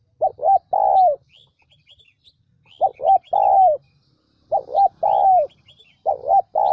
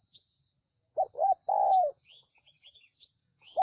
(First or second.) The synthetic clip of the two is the second